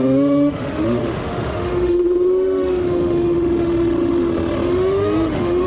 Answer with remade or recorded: remade